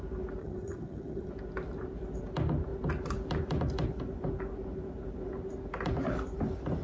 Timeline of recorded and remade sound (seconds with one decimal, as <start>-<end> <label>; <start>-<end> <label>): 0.0-0.4 recorded; 0.4-1.3 remade; 1.3-6.8 recorded